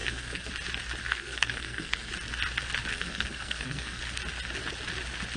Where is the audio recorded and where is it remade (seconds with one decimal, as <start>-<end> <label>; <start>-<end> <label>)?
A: 0.0-0.5 remade; 0.5-1.0 recorded; 1.0-2.1 remade; 2.1-2.9 recorded; 2.9-4.0 remade; 4.0-5.4 recorded